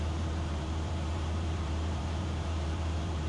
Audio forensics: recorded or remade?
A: remade